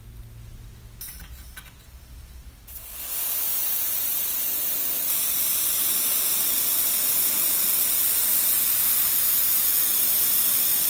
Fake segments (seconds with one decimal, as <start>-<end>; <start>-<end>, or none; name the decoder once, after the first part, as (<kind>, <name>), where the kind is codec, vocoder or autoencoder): none